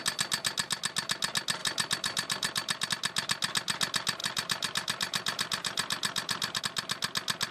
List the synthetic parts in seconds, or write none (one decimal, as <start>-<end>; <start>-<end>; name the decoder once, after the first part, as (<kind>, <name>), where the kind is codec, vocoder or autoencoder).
1.6-2.9 (vocoder, BigVGAN v2); 4.2-6.6